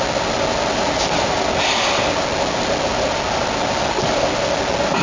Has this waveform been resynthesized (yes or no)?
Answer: no